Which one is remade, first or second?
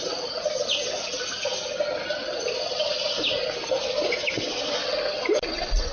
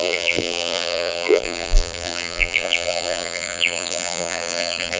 second